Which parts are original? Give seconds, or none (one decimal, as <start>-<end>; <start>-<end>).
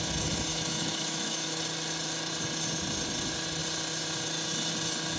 0.0-0.5; 1.6-5.2